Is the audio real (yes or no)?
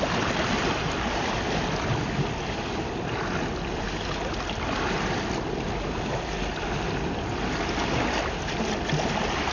yes